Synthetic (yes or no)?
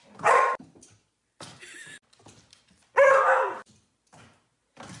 no